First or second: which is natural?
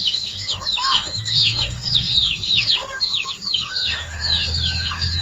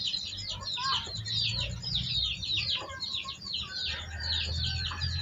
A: second